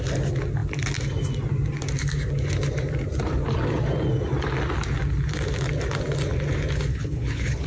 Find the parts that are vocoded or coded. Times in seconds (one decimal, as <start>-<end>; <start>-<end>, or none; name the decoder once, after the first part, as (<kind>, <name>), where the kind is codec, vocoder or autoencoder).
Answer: 6.9-7.7 (codec, HILCodec)